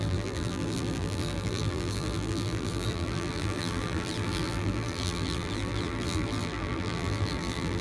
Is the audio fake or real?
fake